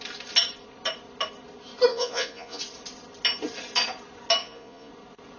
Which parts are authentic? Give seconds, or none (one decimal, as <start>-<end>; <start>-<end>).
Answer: 0.0-1.9; 2.6-4.4; 4.9-5.4